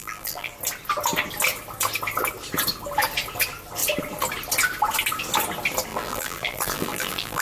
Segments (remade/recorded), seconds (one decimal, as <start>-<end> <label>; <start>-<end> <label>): 0.0-0.5 remade; 0.5-5.9 recorded; 5.9-7.4 remade